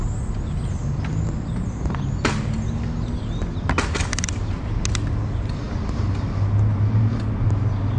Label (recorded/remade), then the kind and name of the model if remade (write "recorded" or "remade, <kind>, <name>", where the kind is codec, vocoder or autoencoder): recorded